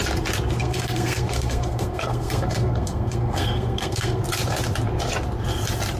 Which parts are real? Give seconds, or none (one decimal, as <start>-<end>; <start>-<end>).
0.0-0.6; 4.2-6.0